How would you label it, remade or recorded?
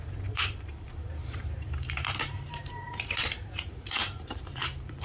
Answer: remade